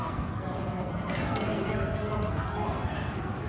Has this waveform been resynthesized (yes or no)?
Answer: yes